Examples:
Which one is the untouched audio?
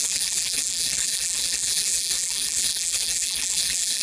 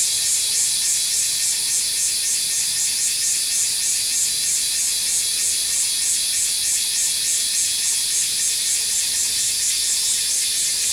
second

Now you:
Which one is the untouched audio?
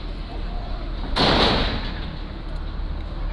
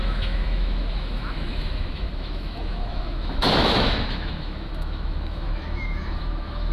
first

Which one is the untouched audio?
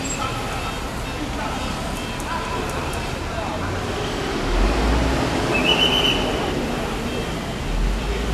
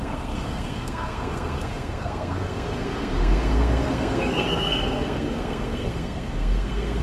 first